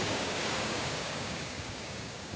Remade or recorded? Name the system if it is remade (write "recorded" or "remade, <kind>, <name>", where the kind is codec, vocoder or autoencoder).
remade, codec, DAC